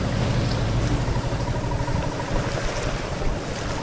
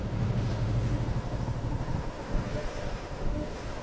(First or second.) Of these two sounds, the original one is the first